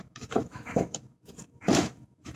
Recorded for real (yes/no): no